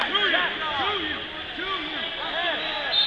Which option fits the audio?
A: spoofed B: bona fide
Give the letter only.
B